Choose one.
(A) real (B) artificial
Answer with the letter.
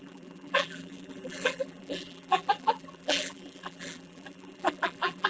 B